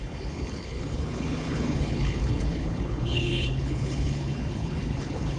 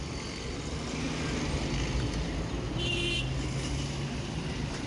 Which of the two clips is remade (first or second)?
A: first